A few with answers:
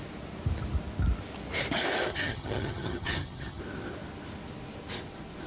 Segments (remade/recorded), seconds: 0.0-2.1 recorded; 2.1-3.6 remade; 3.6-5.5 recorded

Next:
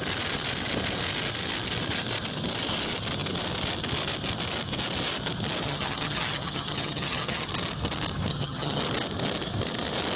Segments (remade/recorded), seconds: 0.0-5.6 recorded; 5.6-7.5 remade; 7.5-8.3 recorded; 8.3-8.8 remade; 8.8-10.2 recorded

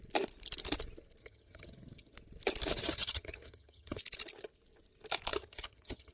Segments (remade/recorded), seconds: 0.0-1.2 recorded; 1.2-2.1 remade; 2.1-2.7 recorded; 2.7-4.0 remade; 4.0-5.3 recorded; 5.3-6.1 remade

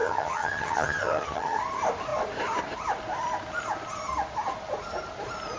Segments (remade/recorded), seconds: 0.0-1.6 remade; 1.6-5.6 recorded